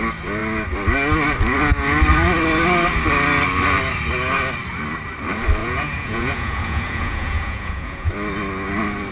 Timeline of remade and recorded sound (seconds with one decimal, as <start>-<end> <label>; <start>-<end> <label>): 0.0-5.6 recorded; 5.6-8.1 remade; 8.1-9.1 recorded